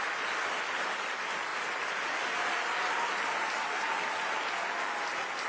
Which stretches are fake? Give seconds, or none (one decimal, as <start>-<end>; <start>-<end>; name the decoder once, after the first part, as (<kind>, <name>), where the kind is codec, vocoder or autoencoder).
none